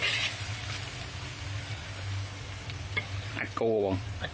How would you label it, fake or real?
real